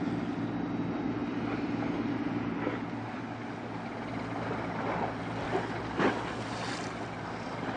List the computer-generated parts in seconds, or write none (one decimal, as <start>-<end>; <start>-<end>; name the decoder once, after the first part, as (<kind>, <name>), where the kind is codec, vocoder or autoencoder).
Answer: none